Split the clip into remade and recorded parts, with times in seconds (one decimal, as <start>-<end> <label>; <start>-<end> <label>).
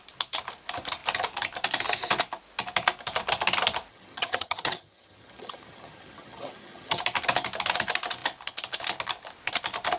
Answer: 0.0-3.9 recorded; 3.9-7.0 remade; 7.0-10.0 recorded